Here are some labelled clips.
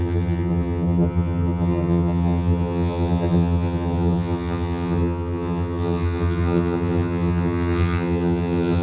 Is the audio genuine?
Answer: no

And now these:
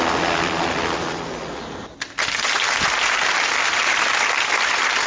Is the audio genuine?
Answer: yes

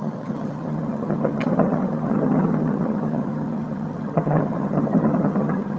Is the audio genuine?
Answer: no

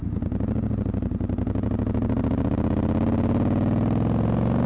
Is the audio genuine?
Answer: yes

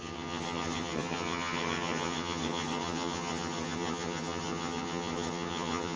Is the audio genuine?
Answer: no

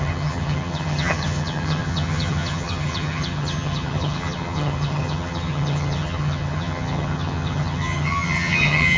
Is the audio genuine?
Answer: no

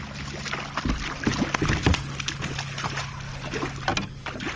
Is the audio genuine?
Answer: yes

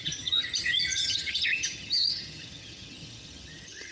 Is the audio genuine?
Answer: no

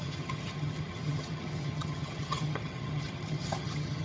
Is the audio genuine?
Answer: no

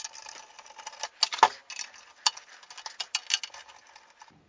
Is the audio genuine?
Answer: yes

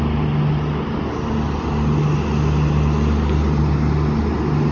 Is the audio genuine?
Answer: yes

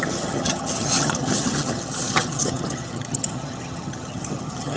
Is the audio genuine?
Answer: no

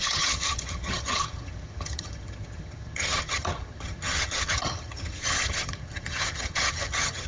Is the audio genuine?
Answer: no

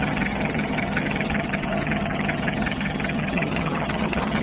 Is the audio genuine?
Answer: no